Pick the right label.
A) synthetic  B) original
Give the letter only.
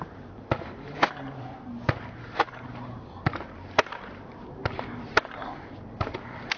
A